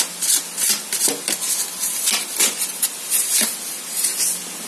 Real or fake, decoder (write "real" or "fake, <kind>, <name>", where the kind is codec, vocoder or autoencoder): real